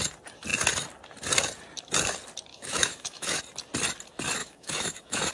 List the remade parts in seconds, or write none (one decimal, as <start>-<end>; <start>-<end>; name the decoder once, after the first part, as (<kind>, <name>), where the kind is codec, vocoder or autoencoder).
2.5-3.4 (autoencoder, DAC-VAE); 4.4-5.3